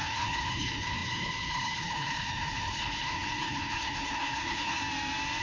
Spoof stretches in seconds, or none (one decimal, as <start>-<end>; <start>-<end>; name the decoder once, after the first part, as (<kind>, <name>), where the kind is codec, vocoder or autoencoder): 0.0-4.8 (codec, HILCodec)